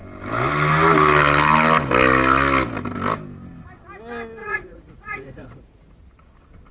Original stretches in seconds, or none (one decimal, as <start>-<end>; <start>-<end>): 0.0-4.4; 6.0-6.7